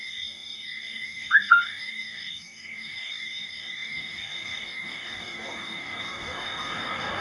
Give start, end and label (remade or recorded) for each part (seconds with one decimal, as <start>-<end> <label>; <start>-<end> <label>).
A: 0.0-7.2 remade